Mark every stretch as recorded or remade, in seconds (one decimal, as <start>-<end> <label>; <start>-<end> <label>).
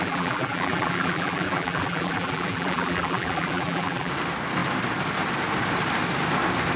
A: 0.0-4.1 remade; 4.1-6.8 recorded